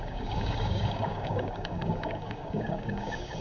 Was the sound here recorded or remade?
remade